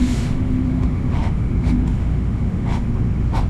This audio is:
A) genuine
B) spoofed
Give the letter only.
B